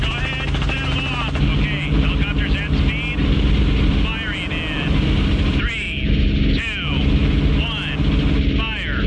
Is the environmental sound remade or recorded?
recorded